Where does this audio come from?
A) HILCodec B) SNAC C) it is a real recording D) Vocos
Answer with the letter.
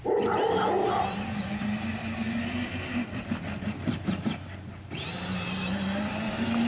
C